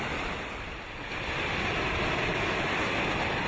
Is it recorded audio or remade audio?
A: recorded